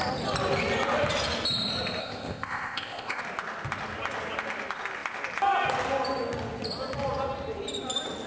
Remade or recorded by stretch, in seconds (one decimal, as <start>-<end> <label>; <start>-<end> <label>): 0.0-2.0 recorded; 2.0-3.2 remade; 3.2-8.3 recorded